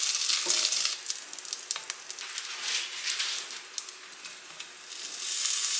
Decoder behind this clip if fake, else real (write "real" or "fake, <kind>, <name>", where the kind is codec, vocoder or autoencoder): real